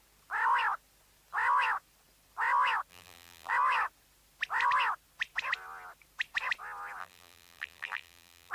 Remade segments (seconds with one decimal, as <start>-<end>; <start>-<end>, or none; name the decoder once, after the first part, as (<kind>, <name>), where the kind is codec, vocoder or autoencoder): 2.9-3.5 (vocoder, BigVGAN v2); 7.0-8.5